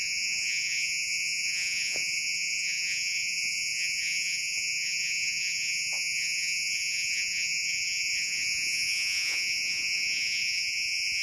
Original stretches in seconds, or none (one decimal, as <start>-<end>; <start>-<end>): none

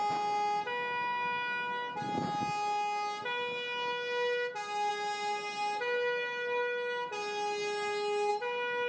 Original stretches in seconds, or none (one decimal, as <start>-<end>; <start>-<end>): 0.0-8.9